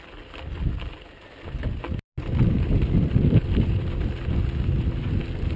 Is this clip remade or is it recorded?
recorded